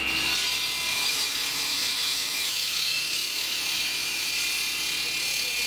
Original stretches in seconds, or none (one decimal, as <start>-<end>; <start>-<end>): 0.0-0.9; 4.3-5.7